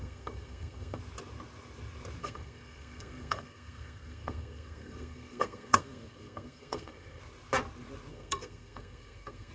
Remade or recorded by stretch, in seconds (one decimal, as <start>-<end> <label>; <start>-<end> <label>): 0.0-1.0 remade; 1.0-2.2 recorded; 2.2-7.2 remade; 7.2-8.1 recorded; 8.1-9.5 remade